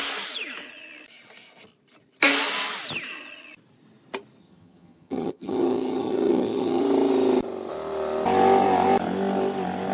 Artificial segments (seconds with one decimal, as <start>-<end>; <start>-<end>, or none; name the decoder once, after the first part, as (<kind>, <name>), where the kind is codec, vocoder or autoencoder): 4.4-6.8 (vocoder, HiFi-GAN)